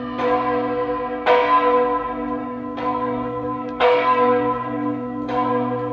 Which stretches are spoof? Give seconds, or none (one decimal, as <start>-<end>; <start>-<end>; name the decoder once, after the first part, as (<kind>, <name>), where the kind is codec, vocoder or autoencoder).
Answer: 2.4-5.5 (codec, DAC)